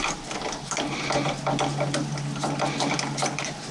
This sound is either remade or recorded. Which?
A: recorded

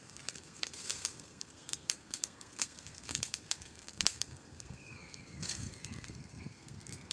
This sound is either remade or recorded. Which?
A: remade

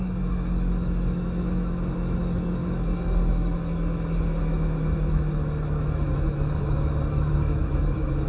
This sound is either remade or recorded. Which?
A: remade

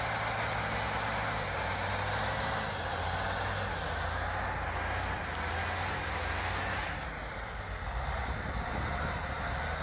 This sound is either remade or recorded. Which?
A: recorded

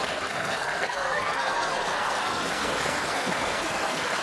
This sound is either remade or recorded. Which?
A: remade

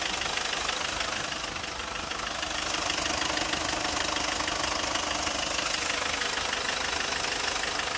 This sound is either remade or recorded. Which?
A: recorded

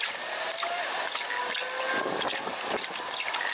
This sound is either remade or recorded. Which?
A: recorded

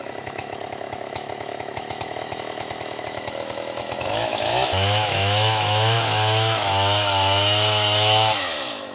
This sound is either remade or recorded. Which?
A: remade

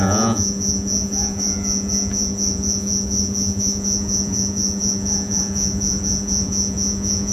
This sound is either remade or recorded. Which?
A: remade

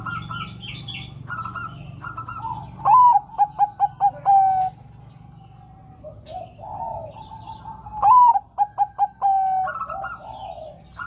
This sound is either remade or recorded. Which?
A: recorded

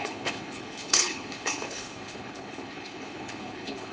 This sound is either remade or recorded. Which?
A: remade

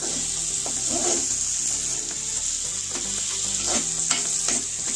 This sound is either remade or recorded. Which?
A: recorded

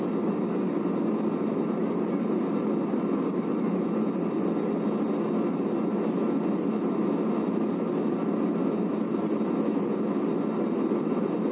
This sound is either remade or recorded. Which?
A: recorded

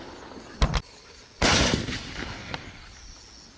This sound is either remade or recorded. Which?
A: recorded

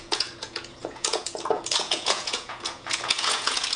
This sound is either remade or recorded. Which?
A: remade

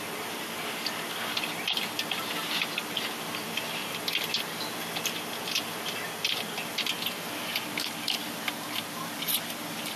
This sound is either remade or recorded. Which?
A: recorded